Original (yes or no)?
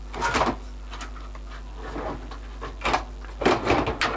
yes